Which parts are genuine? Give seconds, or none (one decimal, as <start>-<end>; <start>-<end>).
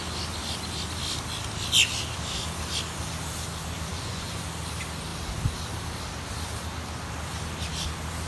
0.0-3.9; 4.4-8.3